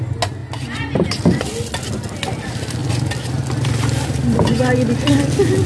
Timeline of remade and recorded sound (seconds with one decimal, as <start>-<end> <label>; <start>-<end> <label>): 0.0-5.7 recorded